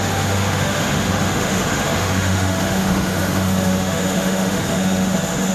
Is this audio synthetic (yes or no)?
yes